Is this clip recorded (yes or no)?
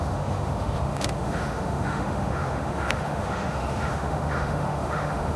no